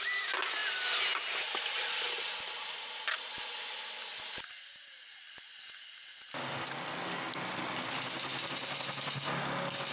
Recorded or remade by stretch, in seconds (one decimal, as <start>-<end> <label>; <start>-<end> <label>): 0.0-9.9 recorded

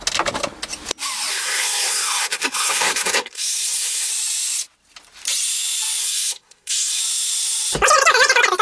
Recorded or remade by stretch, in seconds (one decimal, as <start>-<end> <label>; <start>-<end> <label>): 0.0-1.3 recorded; 1.3-4.1 remade; 4.1-6.0 recorded; 6.0-7.0 remade; 7.0-8.6 recorded

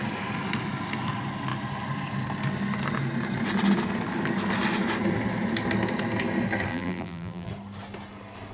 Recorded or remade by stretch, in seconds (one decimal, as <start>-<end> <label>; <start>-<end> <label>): 0.0-6.7 recorded; 6.7-7.5 remade; 7.5-8.5 recorded

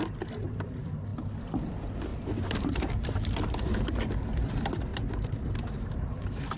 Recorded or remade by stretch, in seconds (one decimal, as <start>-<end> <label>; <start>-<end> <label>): 0.0-2.1 recorded; 2.1-2.9 remade; 2.9-4.9 recorded; 4.9-5.9 remade; 5.9-6.6 recorded

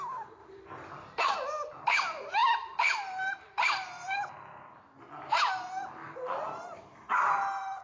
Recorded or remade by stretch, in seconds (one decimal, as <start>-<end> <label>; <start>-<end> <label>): 0.0-0.4 recorded; 0.4-1.2 remade; 1.2-2.4 recorded; 2.4-4.3 remade; 4.3-6.0 recorded; 6.0-6.8 remade; 6.8-7.8 recorded

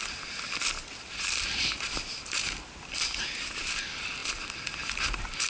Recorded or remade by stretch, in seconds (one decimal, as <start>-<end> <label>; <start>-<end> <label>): 0.0-4.2 remade; 4.2-5.0 recorded; 5.0-5.5 remade

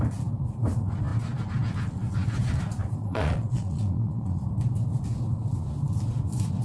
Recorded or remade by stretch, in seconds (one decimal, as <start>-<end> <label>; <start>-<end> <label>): 0.0-3.0 recorded; 3.0-4.4 remade; 4.4-6.6 recorded

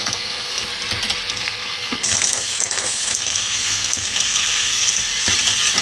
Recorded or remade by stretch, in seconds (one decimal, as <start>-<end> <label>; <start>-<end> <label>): 0.0-0.7 remade; 0.7-1.3 recorded; 1.3-5.1 remade; 5.1-5.8 recorded